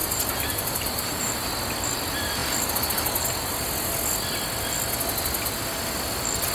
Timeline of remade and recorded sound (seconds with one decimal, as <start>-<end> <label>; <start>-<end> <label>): 0.0-1.5 remade; 1.5-6.5 recorded